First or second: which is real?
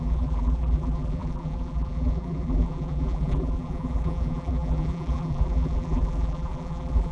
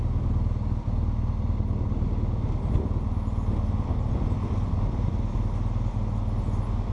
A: second